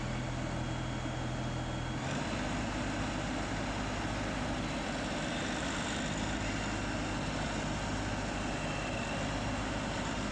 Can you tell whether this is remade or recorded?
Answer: recorded